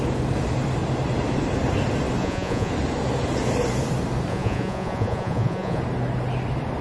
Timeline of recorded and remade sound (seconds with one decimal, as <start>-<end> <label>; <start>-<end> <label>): 0.0-2.2 recorded; 2.2-2.7 remade; 2.7-4.3 recorded; 4.3-5.8 remade; 5.8-6.8 recorded